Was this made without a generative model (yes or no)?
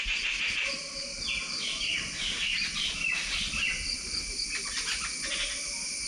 yes